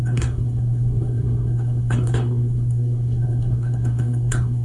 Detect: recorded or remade remade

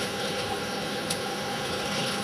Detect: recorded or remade remade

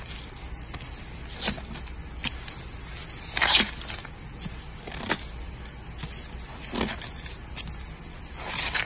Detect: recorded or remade recorded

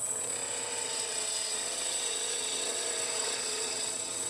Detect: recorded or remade remade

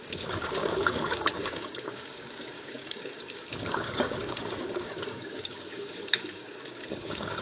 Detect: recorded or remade remade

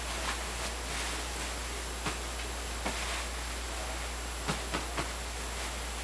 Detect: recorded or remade recorded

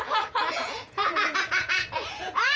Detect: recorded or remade remade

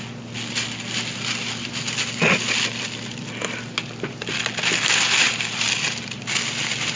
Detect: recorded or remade recorded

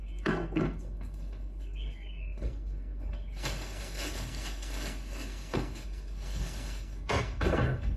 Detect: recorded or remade remade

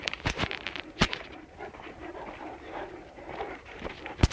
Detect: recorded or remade remade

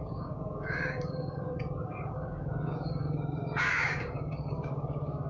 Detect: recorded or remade remade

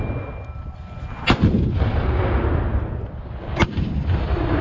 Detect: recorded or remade recorded